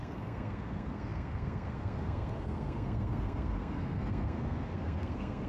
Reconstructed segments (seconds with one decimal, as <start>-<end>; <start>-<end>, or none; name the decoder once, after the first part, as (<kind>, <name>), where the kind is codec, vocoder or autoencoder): 0.0-5.5 (codec, SNAC)